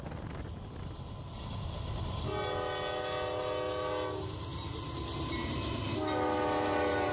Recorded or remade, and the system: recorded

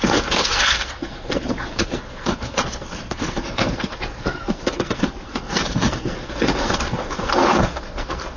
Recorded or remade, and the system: remade, codec, SNAC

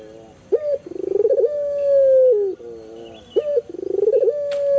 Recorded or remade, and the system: recorded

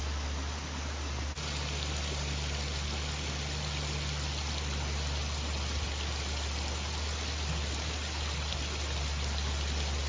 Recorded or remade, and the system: recorded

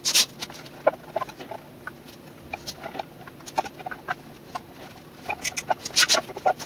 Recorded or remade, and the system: recorded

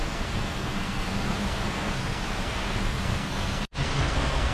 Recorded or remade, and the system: remade, codec, SNAC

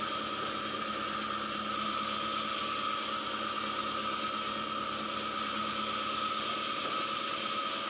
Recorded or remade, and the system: recorded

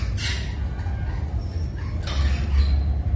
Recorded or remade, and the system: recorded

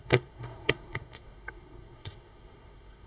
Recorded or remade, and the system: remade, codec, SNAC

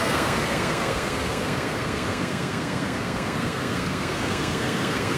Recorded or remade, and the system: remade, codec, SNAC